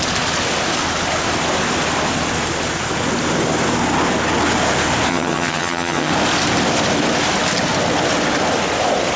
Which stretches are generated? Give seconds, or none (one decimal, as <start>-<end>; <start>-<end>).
5.1-6.1